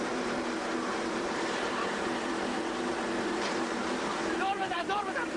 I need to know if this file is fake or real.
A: fake